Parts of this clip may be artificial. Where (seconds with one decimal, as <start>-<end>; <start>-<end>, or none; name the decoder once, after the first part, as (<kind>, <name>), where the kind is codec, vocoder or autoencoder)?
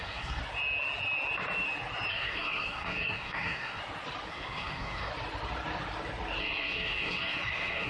0.0-0.4 (codec, SNAC); 2.1-3.8; 4.3-5.1; 6.4-7.9